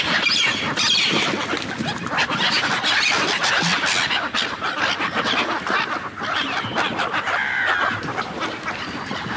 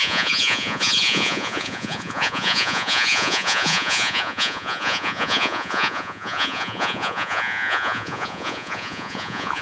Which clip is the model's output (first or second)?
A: second